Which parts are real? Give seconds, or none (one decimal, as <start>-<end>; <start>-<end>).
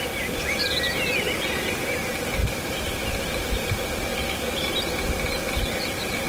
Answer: 0.0-2.4; 4.7-6.3